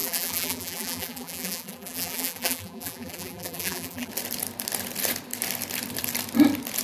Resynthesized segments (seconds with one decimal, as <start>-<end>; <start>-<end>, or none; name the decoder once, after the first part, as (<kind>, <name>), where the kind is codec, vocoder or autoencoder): 0.0-4.1 (vocoder, BigVGAN v2)